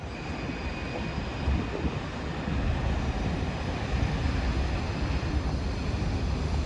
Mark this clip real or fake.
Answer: real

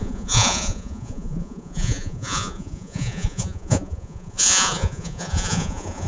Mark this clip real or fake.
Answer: fake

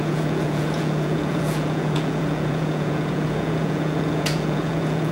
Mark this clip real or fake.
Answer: fake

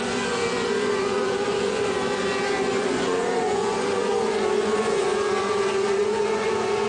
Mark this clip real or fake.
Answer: fake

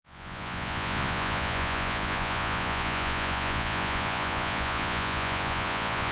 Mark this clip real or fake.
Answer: fake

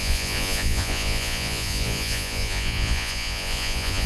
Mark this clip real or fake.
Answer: fake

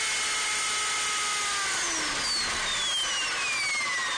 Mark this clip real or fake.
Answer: real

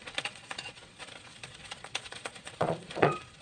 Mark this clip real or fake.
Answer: fake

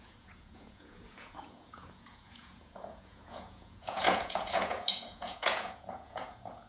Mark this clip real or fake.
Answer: fake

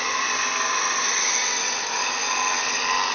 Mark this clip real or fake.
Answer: real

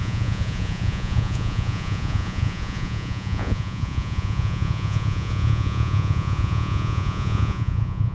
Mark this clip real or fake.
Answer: fake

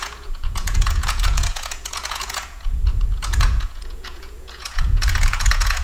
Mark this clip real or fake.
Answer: fake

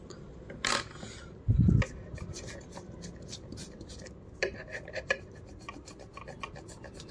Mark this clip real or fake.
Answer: real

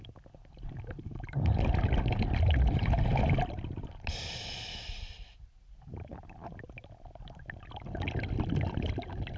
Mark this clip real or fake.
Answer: real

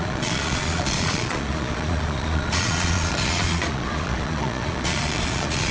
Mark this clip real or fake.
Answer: fake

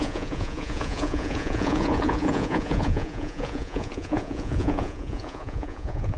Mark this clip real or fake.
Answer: fake